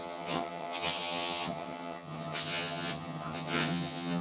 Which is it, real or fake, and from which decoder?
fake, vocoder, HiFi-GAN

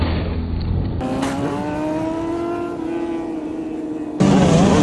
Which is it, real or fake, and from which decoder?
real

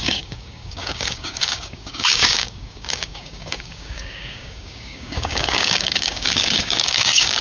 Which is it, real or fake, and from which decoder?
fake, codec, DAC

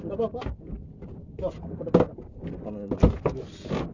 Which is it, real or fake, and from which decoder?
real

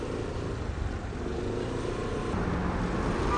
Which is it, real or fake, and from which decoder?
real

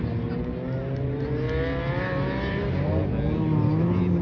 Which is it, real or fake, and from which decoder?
real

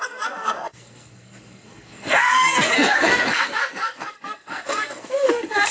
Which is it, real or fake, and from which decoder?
fake, codec, SNAC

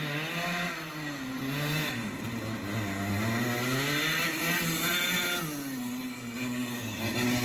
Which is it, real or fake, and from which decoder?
real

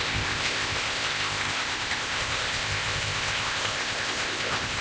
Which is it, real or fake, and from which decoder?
fake, codec, ZipCodec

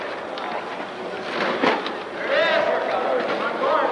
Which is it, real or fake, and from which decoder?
real